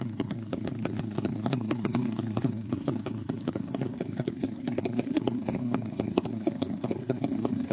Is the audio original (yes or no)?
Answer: no